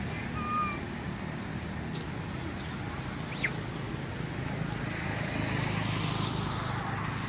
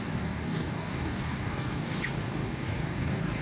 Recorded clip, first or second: first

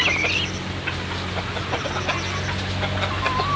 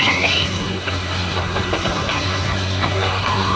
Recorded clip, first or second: first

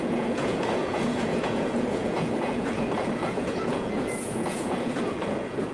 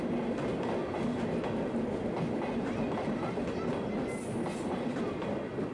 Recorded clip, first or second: second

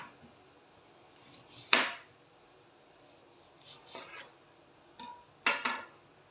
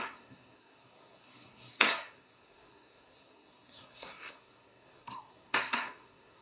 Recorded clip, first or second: first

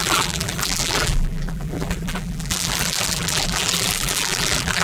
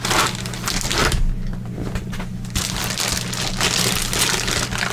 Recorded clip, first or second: second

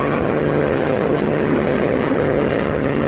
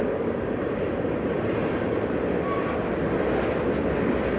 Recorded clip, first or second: second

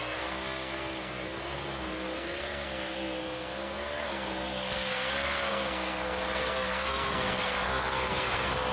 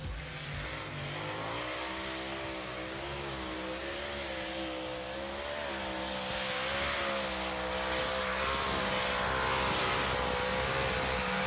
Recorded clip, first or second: second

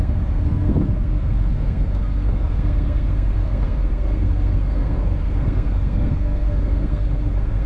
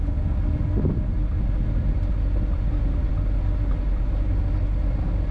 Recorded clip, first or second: second